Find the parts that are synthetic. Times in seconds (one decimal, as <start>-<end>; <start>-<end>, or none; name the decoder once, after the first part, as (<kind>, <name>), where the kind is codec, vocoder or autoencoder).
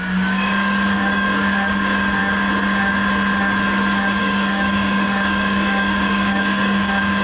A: 0.0-2.2 (codec, DAC); 4.2-7.2